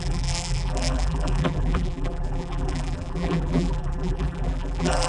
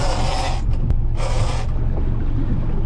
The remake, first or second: first